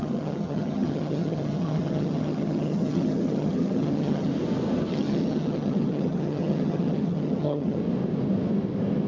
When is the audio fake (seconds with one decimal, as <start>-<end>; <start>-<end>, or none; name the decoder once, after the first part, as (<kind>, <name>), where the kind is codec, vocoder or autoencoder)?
0.0-4.3 (vocoder, HiFi-GAN); 4.9-7.8